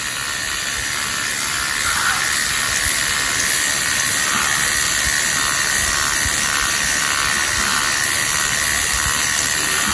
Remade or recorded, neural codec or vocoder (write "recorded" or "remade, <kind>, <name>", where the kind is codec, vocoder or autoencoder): remade, vocoder, BigVGAN v2